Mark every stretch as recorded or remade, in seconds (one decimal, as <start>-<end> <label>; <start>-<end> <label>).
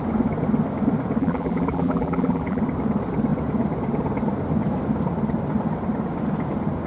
0.0-1.2 recorded; 1.2-2.6 remade; 2.6-6.9 recorded